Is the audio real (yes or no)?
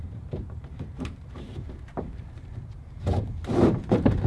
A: no